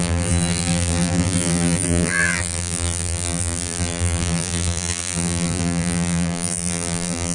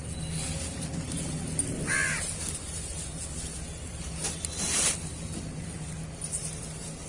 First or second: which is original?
second